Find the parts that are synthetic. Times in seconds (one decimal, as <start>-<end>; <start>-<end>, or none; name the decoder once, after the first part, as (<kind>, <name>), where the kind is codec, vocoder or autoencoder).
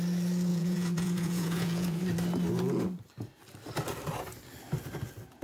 0.5-2.0 (vocoder, Vocos)